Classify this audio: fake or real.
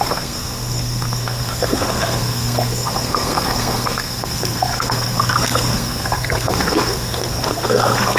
fake